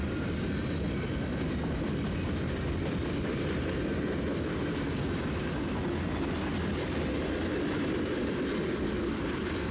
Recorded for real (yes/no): yes